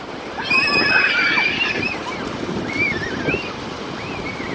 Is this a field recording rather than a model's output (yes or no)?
yes